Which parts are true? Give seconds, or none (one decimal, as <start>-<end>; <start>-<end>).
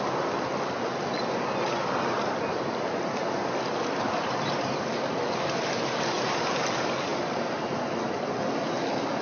0.0-2.5; 6.4-7.1; 8.1-9.2